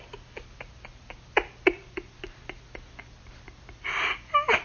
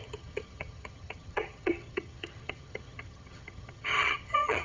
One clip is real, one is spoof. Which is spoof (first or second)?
second